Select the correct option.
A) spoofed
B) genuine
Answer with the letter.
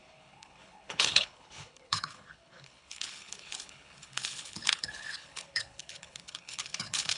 A